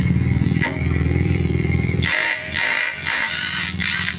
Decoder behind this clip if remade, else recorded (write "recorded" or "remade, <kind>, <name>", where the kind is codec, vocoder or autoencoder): remade, vocoder, BigVGAN v2